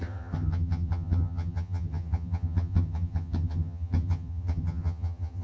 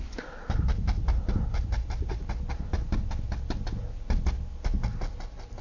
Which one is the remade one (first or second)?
first